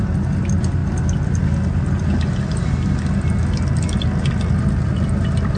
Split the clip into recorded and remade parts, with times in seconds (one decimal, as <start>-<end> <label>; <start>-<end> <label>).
0.0-5.6 recorded